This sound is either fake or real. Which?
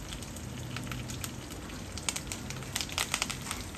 real